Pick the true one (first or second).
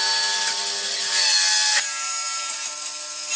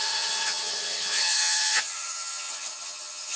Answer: first